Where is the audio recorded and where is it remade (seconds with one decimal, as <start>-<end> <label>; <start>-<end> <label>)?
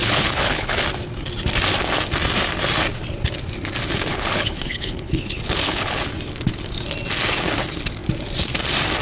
0.0-0.8 remade; 0.8-4.1 recorded; 4.1-6.0 remade; 6.0-9.0 recorded